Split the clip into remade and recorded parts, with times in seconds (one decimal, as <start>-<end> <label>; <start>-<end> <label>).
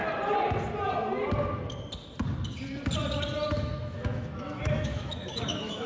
0.0-3.5 recorded; 3.5-5.9 remade